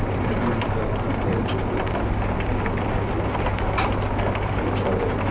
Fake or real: real